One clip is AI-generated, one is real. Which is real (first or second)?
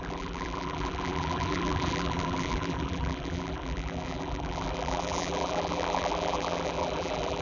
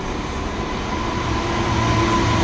second